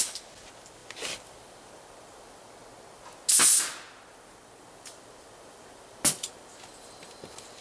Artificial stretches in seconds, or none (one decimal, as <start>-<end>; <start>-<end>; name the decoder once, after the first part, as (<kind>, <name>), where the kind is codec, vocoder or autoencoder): none